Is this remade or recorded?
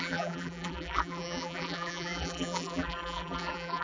remade